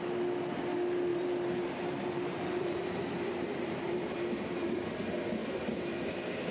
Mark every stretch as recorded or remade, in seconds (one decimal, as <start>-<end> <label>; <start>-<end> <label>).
0.0-1.1 recorded; 1.1-5.0 remade; 5.0-5.4 recorded; 5.4-6.5 remade